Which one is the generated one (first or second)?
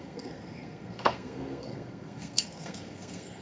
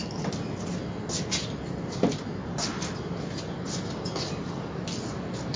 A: first